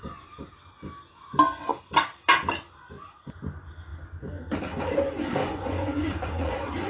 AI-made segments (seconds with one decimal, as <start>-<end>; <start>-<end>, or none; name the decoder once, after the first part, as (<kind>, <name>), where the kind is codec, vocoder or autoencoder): 5.4-6.9 (vocoder, Vocos)

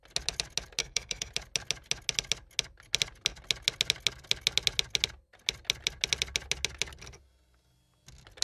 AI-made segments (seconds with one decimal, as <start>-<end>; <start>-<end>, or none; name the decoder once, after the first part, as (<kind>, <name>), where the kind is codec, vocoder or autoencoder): 0.8-1.3 (codec, SNAC)

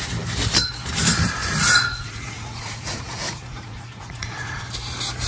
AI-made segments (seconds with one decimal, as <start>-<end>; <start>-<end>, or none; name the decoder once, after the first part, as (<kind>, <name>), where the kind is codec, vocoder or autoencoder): 1.4-4.6 (vocoder, Vocos)